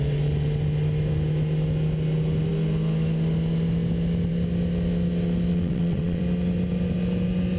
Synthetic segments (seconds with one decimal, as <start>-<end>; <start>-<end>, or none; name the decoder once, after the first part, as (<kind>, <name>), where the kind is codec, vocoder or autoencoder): 5.5-6.2 (vocoder, WaveNeXt)